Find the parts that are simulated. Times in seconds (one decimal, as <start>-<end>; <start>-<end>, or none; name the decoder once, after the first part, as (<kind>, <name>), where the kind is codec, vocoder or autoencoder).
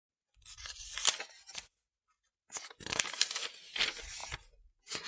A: 1.9-3.5 (vocoder, BigVGAN v2); 4.2-5.1